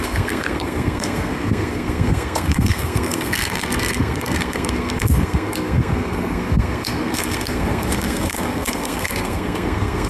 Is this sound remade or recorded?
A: remade